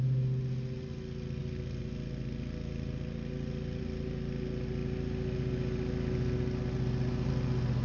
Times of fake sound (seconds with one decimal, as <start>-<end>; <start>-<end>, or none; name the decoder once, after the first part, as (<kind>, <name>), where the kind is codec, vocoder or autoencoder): none